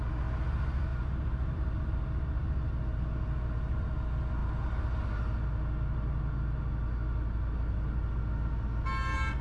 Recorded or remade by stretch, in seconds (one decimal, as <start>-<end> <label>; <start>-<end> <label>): 0.0-0.9 recorded; 0.9-2.6 remade; 2.6-9.4 recorded